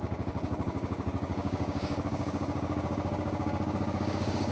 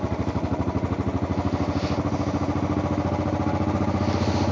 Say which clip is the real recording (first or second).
second